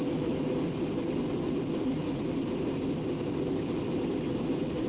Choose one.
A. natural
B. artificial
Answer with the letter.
A